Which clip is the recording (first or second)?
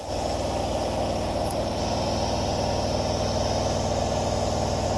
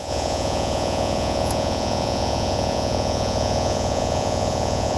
first